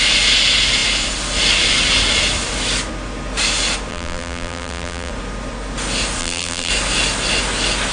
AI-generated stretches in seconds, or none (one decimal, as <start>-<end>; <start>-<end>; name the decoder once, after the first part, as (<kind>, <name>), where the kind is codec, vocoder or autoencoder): 3.9-5.1 (vocoder, BigVGAN v2); 6.2-6.7